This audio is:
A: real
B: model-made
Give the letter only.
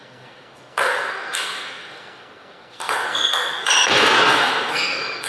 B